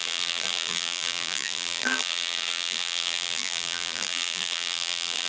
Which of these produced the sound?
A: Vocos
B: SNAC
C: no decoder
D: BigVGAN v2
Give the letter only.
D